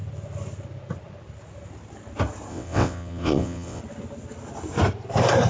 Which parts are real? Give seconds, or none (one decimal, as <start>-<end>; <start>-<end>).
0.0-2.5; 3.8-5.5